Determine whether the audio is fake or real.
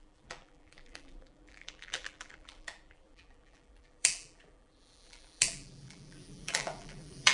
fake